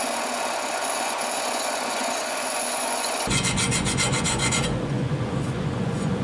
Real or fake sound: fake